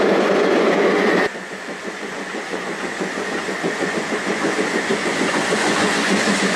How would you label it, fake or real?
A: fake